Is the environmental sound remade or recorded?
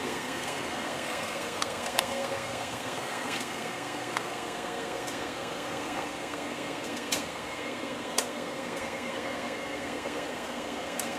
remade